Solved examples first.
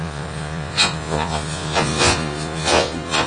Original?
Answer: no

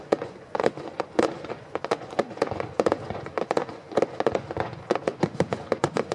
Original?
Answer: no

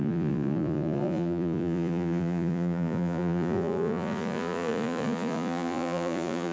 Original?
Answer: no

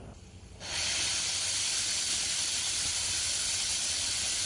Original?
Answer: yes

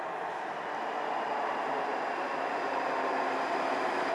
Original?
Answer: yes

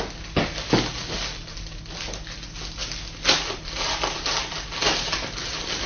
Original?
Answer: yes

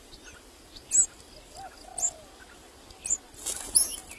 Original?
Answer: yes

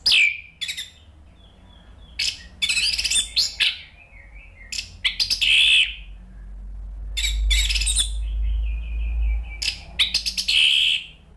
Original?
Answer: yes